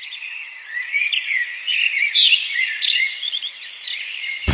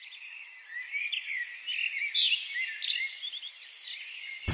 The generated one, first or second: first